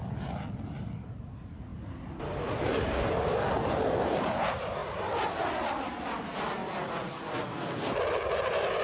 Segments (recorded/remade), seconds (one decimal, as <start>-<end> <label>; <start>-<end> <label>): 0.0-1.7 remade; 1.7-3.5 recorded; 3.5-4.8 remade; 4.8-5.7 recorded; 5.7-6.6 remade; 6.6-8.3 recorded; 8.3-8.8 remade